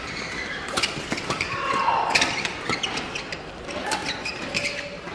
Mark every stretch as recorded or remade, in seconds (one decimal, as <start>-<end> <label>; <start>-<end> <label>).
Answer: 0.0-1.8 remade; 1.8-4.0 recorded; 4.0-5.1 remade